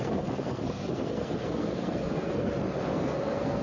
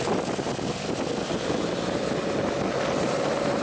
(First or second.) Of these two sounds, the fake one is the first